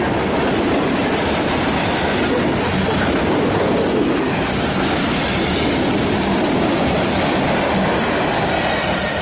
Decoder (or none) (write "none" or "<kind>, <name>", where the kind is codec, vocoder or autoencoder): none